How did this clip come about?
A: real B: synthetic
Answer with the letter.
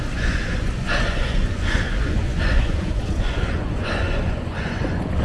B